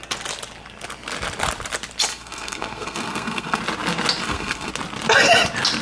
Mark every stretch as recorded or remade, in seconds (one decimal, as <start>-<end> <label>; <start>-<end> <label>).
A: 0.0-2.1 recorded; 2.1-3.6 remade; 3.6-4.2 recorded; 4.2-4.7 remade; 4.7-5.8 recorded